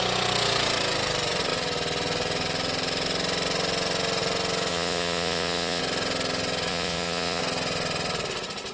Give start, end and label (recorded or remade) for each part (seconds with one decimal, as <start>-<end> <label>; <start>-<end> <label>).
0.0-4.7 recorded; 4.7-5.8 remade; 5.8-6.7 recorded; 6.7-7.4 remade; 7.4-8.7 recorded